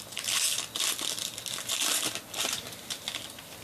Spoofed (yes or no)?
no